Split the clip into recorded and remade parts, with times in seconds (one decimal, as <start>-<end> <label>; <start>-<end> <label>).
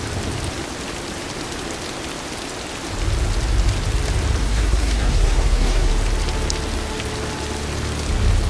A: 0.0-4.4 recorded; 4.4-5.9 remade; 5.9-8.5 recorded